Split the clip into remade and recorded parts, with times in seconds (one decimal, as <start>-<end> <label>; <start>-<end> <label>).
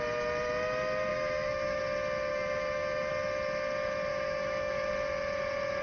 0.0-1.1 recorded; 1.1-1.8 remade; 1.8-2.3 recorded; 2.3-3.1 remade; 3.1-4.1 recorded; 4.1-4.9 remade; 4.9-5.8 recorded